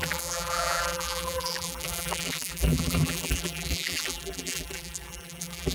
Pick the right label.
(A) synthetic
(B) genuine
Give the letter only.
A